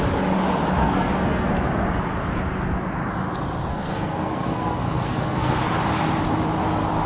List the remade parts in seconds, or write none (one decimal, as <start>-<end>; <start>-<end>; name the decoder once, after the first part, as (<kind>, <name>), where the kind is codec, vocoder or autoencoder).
0.8-1.5 (codec, SNAC); 3.7-5.6

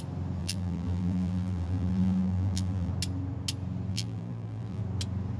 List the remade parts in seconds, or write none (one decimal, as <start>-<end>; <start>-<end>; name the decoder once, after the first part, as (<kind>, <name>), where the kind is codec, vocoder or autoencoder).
0.4-2.9 (vocoder, BigVGAN v2); 3.9-4.8

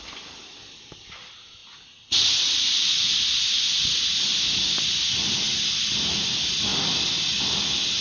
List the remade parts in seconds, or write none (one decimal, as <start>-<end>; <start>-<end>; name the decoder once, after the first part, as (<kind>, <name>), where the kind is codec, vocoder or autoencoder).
none

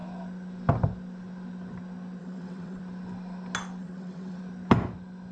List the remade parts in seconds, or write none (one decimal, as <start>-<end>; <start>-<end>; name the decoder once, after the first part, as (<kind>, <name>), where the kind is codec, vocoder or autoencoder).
2.2-2.8 (vocoder, WaveNeXt); 3.8-4.4

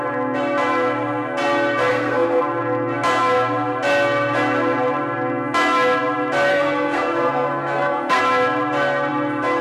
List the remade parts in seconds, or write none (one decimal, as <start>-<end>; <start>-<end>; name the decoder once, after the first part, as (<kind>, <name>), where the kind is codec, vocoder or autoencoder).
1.9-2.4 (codec, SNAC); 6.5-8.2

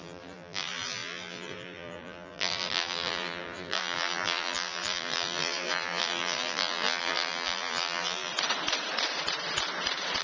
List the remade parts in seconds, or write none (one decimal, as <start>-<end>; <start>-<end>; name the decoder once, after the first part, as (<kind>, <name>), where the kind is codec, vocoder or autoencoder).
0.0-8.3 (vocoder, BigVGAN v2)

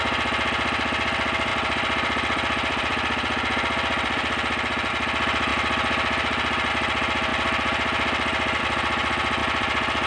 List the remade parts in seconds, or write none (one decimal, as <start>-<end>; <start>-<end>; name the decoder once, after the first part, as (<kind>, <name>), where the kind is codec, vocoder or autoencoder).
1.5-4.9 (vocoder, BigVGAN v2); 9.4-10.1